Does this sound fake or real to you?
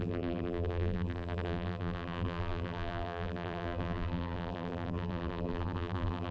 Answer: fake